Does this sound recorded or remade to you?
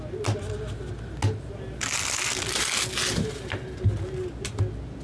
recorded